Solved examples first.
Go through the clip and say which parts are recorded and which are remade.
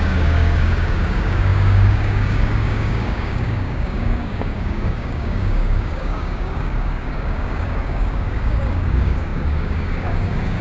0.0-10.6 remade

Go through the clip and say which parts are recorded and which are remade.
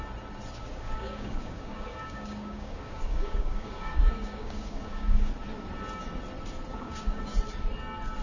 0.0-0.6 recorded; 0.6-5.3 remade; 5.3-6.7 recorded; 6.7-7.2 remade; 7.2-8.2 recorded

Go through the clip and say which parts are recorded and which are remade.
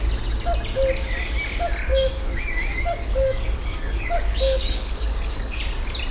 0.0-1.9 recorded; 1.9-5.6 remade; 5.6-6.1 recorded